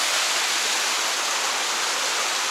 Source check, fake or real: real